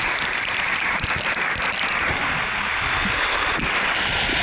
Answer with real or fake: real